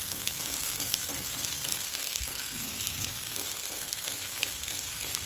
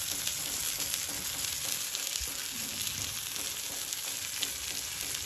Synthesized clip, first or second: first